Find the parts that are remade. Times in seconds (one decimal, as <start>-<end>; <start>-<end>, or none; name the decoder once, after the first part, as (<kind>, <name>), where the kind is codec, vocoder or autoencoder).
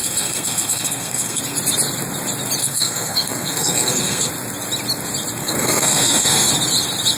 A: 0.0-1.4 (codec, SNAC); 2.6-4.3; 5.4-6.5